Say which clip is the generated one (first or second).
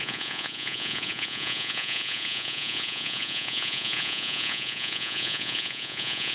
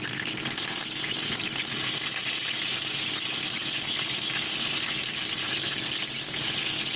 first